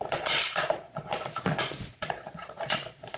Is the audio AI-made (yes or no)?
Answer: yes